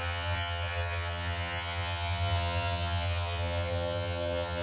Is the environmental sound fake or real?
fake